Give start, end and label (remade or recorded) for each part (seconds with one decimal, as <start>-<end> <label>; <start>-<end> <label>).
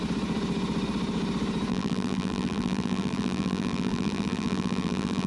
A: 0.0-1.7 recorded; 1.7-5.3 remade